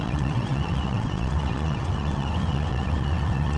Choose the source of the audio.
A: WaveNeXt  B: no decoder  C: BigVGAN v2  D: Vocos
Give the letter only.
A